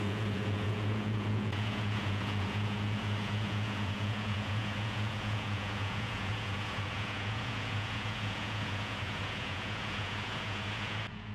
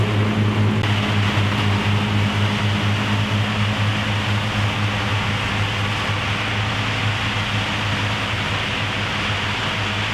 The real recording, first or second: second